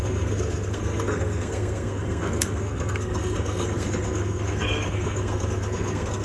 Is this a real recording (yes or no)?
no